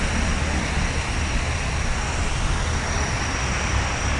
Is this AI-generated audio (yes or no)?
no